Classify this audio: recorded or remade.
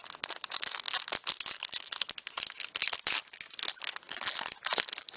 recorded